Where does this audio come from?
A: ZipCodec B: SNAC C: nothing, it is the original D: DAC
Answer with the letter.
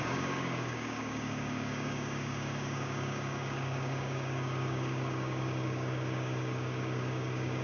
D